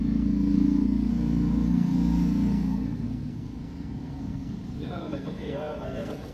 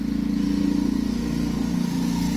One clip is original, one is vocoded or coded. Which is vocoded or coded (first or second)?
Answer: first